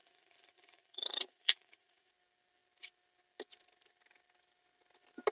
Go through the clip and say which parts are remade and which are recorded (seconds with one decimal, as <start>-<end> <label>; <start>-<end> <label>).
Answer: 0.0-2.1 remade; 2.1-5.3 recorded